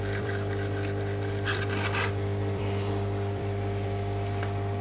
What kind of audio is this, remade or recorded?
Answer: remade